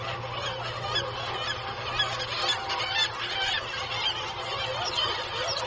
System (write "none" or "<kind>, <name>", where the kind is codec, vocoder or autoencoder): none